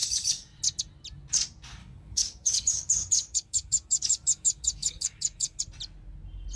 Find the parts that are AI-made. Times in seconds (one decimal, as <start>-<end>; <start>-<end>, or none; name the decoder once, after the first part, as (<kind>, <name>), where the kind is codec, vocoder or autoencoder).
0.0-0.6 (codec, DAC); 1.8-5.6